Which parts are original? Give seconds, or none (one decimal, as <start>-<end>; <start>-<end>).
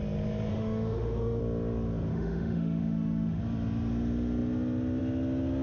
0.0-0.5; 1.4-2.1; 3.4-5.6